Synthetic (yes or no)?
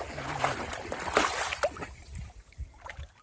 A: no